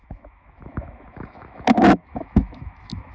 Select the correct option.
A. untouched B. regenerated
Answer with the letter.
B